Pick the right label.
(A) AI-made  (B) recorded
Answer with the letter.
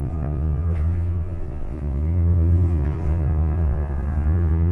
A